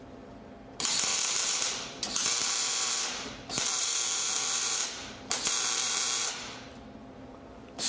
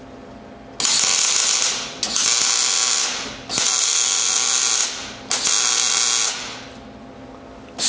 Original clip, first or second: second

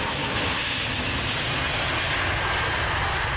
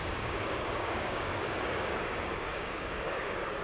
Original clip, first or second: first